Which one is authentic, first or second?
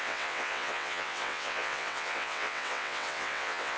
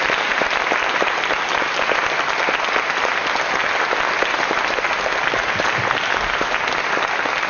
second